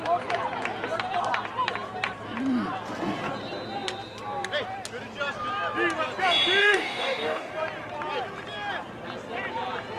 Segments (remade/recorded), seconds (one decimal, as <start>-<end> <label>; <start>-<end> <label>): 0.0-6.6 recorded; 6.6-7.5 remade; 7.5-10.0 recorded